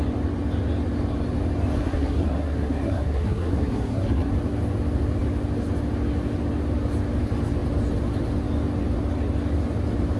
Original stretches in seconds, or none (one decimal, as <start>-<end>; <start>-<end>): 0.0-1.8; 4.3-10.2